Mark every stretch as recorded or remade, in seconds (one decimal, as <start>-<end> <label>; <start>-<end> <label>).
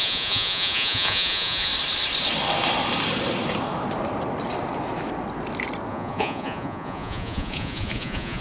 0.0-1.7 remade; 1.7-5.9 recorded; 5.9-8.4 remade